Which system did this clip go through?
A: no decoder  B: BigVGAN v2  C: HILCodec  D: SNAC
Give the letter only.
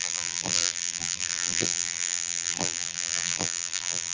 B